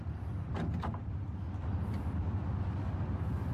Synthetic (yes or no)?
no